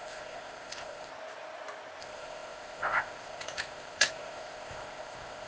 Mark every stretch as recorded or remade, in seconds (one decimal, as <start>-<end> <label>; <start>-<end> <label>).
0.0-1.1 remade; 1.1-2.0 recorded; 2.0-5.5 remade